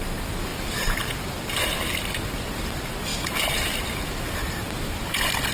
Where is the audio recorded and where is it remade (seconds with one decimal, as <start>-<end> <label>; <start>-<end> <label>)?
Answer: 0.0-5.5 recorded